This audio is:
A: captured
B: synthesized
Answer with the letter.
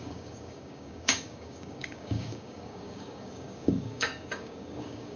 B